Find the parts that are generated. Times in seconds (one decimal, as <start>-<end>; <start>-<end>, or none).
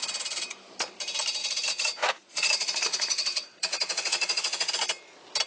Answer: 1.4-4.7